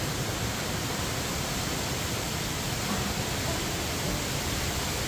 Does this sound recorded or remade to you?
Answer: remade